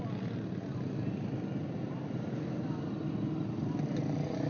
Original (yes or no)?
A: yes